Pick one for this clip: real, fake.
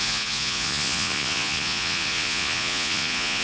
fake